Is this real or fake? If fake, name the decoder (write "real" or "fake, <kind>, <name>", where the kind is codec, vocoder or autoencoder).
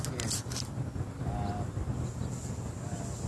real